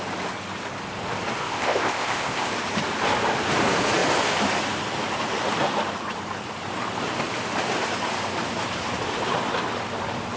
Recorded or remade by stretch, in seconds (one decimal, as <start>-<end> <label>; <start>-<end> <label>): 0.0-1.4 recorded; 1.4-2.5 remade; 2.5-10.4 recorded